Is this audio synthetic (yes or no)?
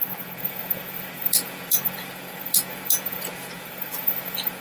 yes